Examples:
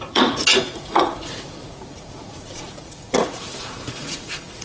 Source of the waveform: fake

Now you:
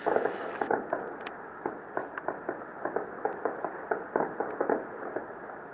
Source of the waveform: real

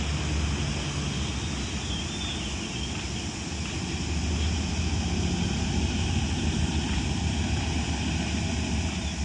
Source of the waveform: real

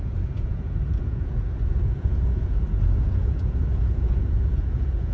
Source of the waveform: fake